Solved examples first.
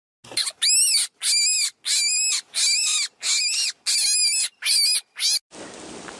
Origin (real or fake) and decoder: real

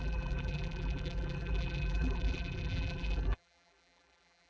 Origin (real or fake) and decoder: fake, vocoder, BigVGAN v2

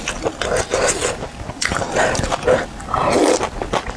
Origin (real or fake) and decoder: real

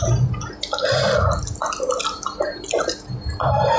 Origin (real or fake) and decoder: real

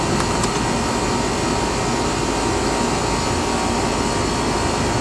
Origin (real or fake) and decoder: real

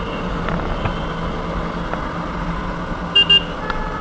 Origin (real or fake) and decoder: real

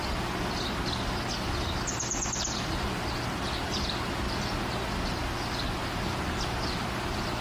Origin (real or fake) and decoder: real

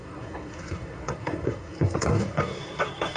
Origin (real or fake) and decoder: fake, codec, SNAC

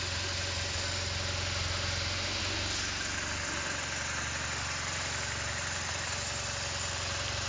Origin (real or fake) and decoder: real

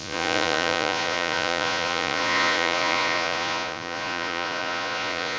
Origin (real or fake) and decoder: fake, vocoder, Vocos